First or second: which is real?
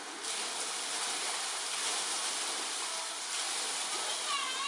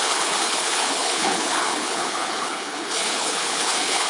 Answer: first